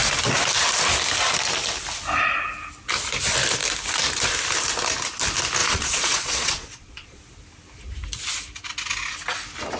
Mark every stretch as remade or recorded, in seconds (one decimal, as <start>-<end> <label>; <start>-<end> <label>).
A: 0.0-5.6 recorded; 5.6-7.2 remade; 7.2-9.8 recorded